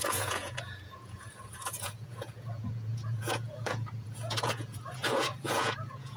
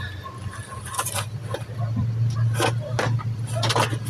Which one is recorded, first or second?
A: second